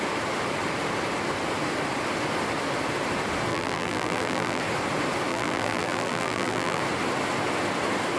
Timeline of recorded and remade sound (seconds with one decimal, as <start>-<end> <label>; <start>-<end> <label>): 0.0-3.5 recorded; 3.5-4.6 remade; 4.6-5.3 recorded; 5.3-6.8 remade; 6.8-8.2 recorded